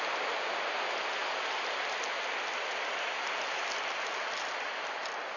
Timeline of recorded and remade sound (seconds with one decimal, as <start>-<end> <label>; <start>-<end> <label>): 0.0-5.4 recorded